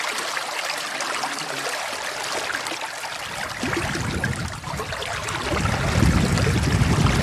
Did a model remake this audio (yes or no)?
no